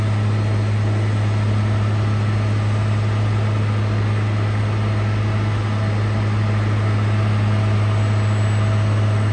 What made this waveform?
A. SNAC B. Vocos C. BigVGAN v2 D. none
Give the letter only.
D